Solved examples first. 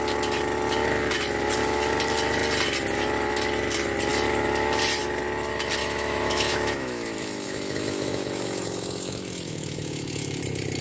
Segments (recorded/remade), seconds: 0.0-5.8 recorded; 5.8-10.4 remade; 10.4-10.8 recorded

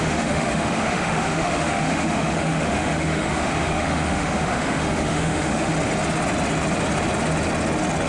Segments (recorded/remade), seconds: 0.0-5.7 remade; 5.7-8.1 recorded

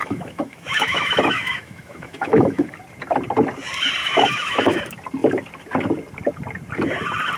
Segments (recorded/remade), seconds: 0.0-2.8 remade; 2.8-4.0 recorded; 4.0-4.8 remade; 4.8-7.4 recorded

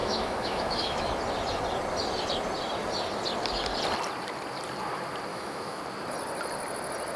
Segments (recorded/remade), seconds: 0.0-1.1 remade; 1.1-5.3 recorded; 5.3-5.8 remade; 5.8-7.2 recorded

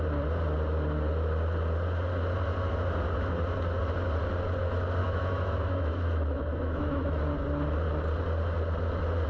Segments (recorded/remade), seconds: 0.0-5.0 recorded; 5.0-7.2 remade; 7.2-9.3 recorded

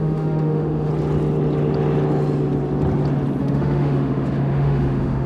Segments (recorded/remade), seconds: 0.0-0.9 remade; 0.9-3.4 recorded; 3.4-5.3 remade

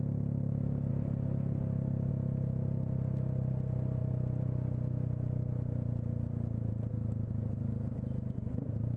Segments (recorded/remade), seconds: 0.0-9.0 recorded